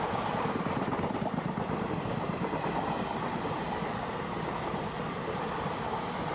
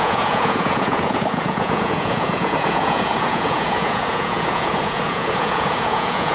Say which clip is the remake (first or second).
second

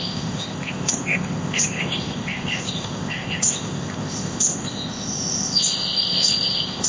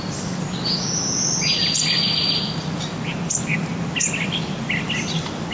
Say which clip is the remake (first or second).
first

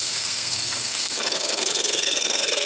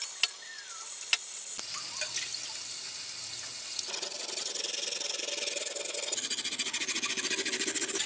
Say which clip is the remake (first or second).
first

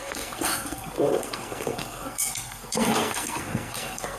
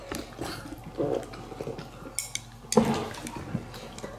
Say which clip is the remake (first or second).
first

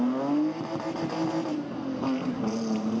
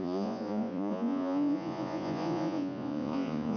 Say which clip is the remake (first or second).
second